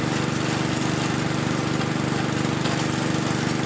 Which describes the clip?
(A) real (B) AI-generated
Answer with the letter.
A